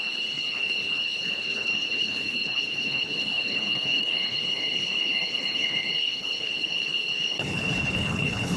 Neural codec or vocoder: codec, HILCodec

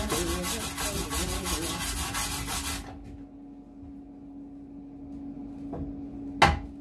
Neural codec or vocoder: none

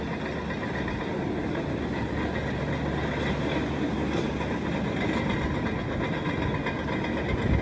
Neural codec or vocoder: none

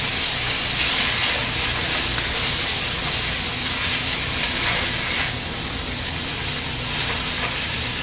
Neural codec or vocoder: none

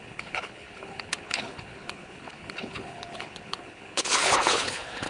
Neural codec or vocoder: codec, HILCodec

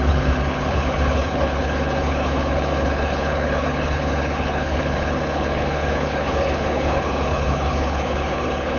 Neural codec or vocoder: codec, HILCodec